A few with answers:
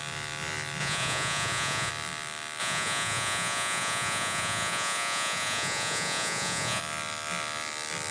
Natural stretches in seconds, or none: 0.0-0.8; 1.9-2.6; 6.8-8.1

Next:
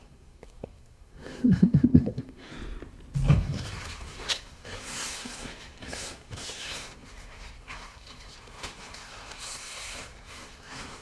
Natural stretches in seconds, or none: 2.5-3.3

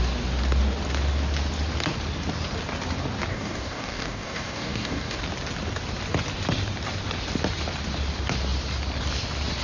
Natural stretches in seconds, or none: 0.0-3.3; 5.2-9.6

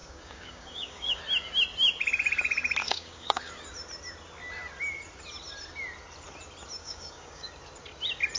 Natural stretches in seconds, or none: 1.2-2.8; 3.5-6.8; 7.5-8.4

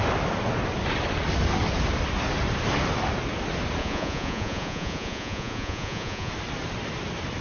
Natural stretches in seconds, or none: 0.0-3.8; 6.3-7.4